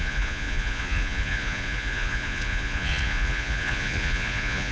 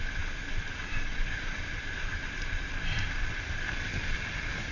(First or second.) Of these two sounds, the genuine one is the second